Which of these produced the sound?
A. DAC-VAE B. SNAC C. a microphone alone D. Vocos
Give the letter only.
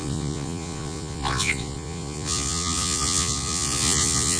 D